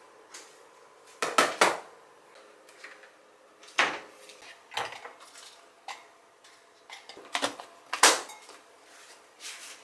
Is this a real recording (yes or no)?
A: yes